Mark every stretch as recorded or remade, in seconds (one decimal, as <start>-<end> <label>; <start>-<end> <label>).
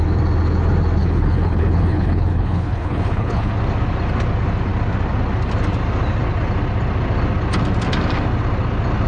0.0-1.0 recorded; 1.0-3.5 remade; 3.5-9.1 recorded